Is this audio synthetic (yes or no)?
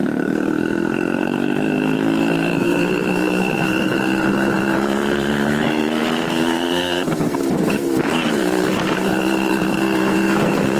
yes